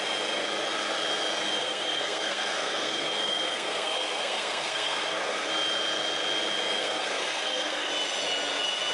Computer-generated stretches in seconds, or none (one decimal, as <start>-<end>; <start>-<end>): 1.6-5.5; 6.8-7.9